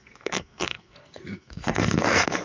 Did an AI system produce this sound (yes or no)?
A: yes